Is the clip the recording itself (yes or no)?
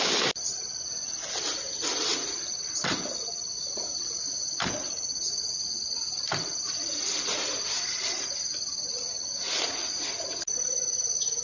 yes